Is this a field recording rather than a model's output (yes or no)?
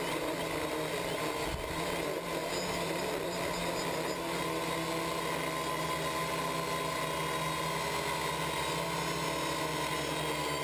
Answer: yes